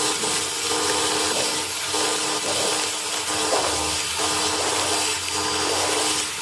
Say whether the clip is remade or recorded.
recorded